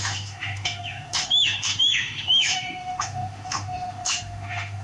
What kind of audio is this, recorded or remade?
remade